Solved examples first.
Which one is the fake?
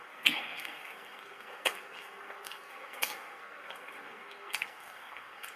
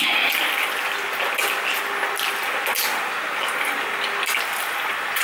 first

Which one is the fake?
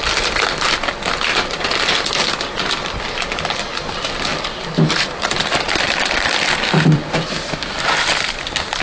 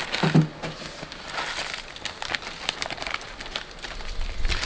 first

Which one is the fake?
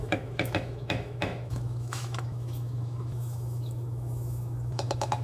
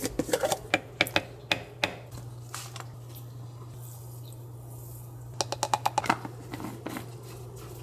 first